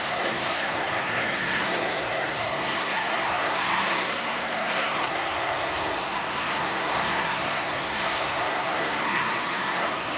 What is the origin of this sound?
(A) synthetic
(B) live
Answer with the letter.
A